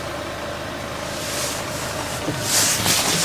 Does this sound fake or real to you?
real